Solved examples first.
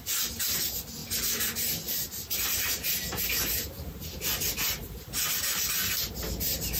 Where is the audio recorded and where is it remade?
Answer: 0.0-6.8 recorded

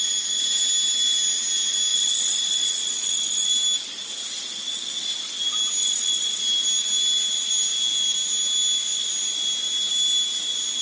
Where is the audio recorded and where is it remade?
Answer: 0.0-1.9 recorded; 1.9-3.5 remade; 3.5-5.8 recorded; 5.8-6.4 remade; 6.4-10.8 recorded